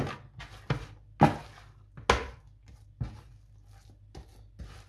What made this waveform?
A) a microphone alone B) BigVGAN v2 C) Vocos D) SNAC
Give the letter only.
A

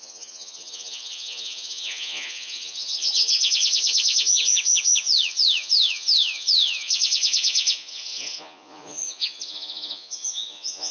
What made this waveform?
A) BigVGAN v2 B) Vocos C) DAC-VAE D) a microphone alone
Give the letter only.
B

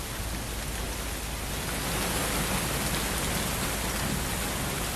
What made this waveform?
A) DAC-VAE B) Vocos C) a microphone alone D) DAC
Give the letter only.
C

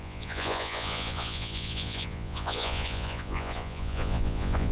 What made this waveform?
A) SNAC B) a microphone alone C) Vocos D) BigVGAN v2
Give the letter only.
C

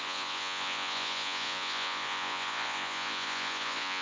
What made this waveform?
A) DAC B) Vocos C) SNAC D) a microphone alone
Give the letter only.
B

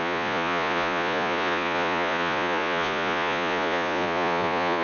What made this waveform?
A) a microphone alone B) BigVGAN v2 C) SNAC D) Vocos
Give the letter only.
D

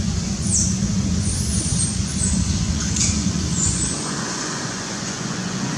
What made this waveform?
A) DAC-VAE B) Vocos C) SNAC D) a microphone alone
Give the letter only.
B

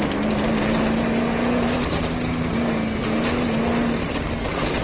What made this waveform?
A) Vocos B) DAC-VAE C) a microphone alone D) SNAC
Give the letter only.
C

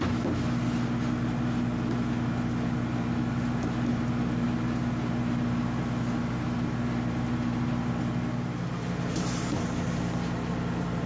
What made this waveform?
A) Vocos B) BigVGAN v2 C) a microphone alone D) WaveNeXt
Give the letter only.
C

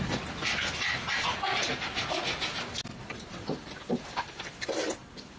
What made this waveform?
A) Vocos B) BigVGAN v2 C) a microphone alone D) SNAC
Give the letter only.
C